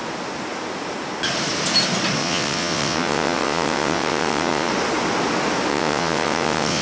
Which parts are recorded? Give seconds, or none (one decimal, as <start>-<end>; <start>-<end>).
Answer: 0.0-2.2; 4.7-5.7